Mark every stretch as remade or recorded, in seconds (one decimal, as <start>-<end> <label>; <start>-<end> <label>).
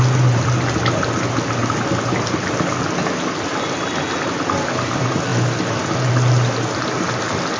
0.0-7.6 recorded